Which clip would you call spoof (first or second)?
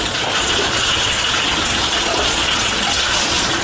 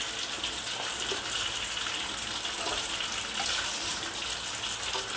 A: first